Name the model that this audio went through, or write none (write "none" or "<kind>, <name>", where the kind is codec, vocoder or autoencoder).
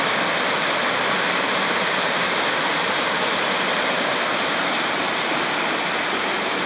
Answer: none